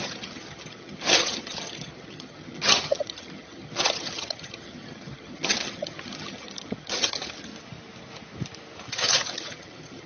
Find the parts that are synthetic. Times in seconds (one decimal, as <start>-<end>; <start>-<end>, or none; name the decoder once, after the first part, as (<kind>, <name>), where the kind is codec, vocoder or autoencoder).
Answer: 0.0-7.5 (vocoder, HiFi-GAN); 8.9-10.1